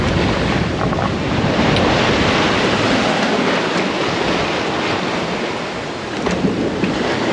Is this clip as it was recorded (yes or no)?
yes